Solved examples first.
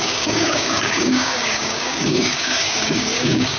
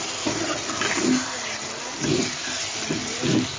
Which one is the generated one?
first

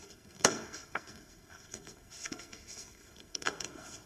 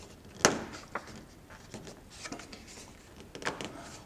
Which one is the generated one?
first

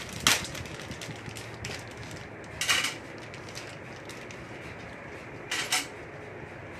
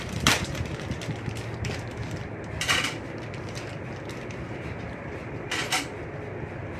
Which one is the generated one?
second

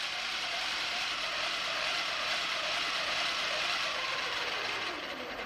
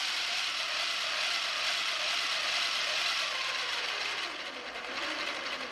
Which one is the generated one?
first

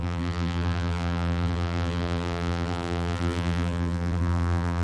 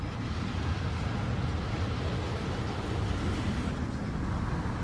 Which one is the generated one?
first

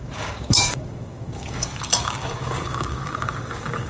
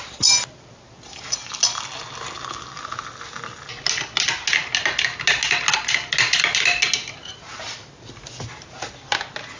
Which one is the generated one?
first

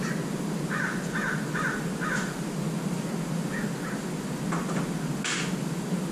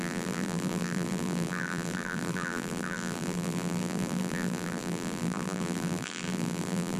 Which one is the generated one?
second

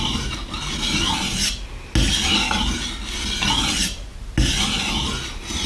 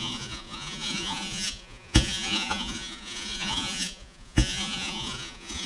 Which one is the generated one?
second